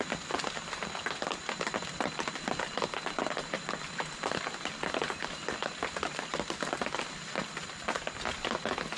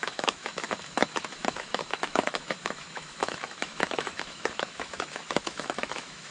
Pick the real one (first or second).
first